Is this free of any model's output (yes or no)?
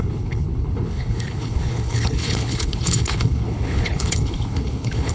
no